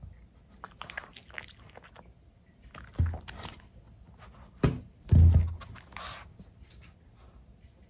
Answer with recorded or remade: recorded